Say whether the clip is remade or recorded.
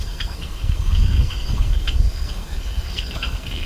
remade